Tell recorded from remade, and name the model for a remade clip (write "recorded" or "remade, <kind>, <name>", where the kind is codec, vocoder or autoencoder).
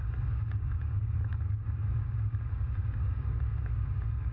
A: remade, codec, DAC